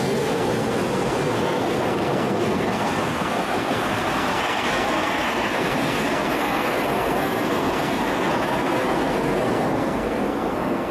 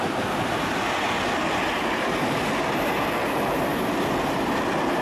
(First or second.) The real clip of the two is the second